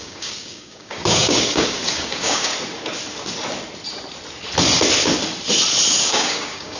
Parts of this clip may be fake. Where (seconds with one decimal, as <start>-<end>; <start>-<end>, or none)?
0.0-2.5; 6.0-6.8